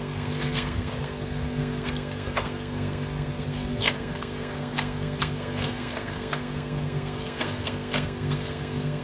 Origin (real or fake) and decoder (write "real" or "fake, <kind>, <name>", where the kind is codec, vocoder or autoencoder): fake, codec, SNAC